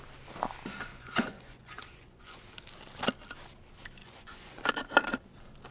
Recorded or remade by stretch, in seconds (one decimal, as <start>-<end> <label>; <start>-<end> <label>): 0.0-0.9 recorded; 0.9-2.4 remade; 2.4-4.0 recorded; 4.0-4.7 remade; 4.7-5.7 recorded